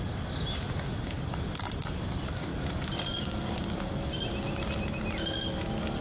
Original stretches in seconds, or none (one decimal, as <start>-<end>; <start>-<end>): 0.0-6.0